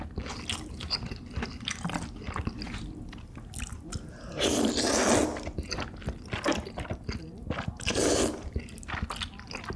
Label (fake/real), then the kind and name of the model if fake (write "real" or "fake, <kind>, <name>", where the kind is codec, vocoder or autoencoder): real